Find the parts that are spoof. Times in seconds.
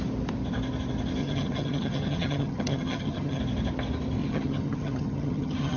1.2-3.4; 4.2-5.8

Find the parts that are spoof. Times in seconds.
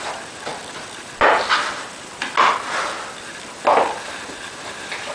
none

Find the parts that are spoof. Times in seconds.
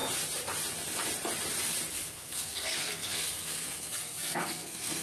1.9-5.0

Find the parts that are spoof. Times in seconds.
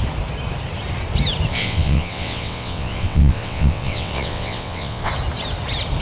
1.5-5.1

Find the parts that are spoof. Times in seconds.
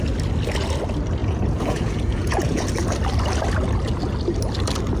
1.2-2.7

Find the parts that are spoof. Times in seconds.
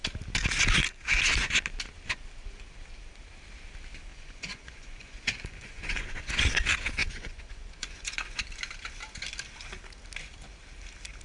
4.1-6.3; 7.0-8.4